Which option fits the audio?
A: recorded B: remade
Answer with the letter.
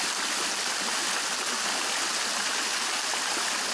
A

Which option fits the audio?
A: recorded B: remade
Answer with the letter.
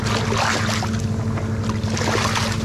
A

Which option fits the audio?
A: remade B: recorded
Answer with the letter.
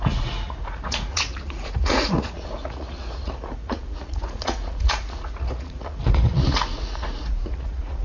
A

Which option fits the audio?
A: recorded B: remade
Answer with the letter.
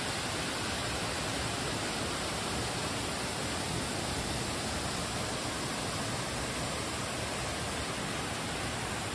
A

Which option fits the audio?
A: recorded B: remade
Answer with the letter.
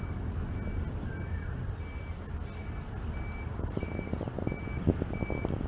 A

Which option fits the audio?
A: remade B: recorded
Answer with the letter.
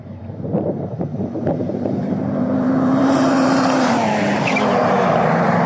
A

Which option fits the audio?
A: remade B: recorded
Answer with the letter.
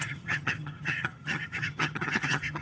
A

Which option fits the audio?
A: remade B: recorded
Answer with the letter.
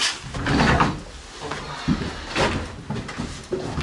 B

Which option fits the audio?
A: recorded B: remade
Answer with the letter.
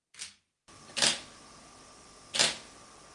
A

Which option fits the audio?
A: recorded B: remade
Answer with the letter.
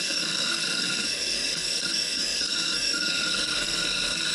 B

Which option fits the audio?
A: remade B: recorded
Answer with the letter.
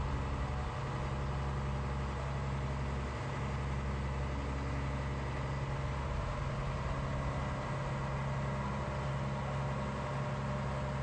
B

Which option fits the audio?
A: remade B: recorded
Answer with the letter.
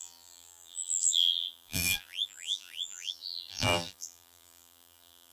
A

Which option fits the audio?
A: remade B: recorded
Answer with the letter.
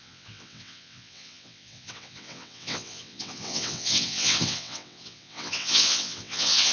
A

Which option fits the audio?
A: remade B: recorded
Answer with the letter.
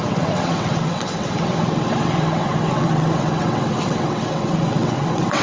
A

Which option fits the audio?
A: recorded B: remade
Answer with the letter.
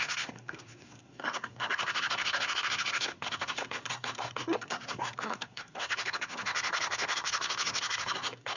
B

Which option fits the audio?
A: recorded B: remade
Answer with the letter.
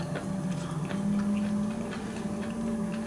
A